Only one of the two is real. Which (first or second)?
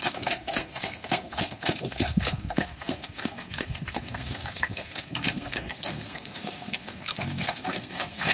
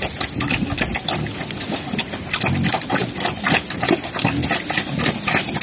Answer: second